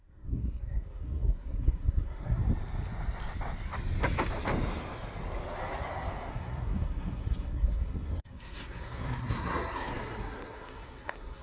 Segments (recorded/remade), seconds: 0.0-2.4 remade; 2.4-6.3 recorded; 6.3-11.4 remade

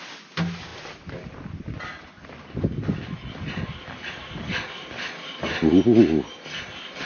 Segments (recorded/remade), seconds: 0.0-7.1 recorded

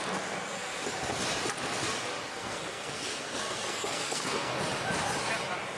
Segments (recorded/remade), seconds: 0.0-2.3 recorded; 2.3-4.5 remade; 4.5-5.8 recorded

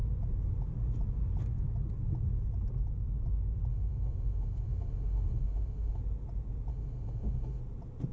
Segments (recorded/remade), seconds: 0.0-3.7 recorded; 3.7-6.0 remade; 6.0-6.7 recorded; 6.7-7.6 remade; 7.6-8.1 recorded

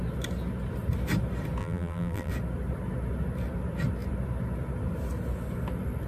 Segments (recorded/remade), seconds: 0.0-1.6 recorded; 1.6-2.3 remade; 2.3-6.1 recorded

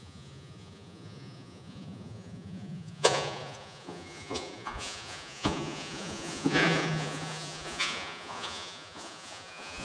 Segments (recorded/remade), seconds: 0.0-9.8 remade

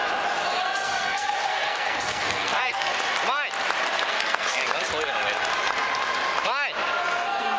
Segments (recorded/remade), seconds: 0.0-0.6 recorded; 0.6-2.9 remade; 2.9-4.1 recorded; 4.1-4.6 remade; 4.6-7.0 recorded; 7.0-7.6 remade